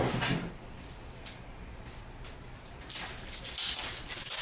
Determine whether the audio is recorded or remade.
recorded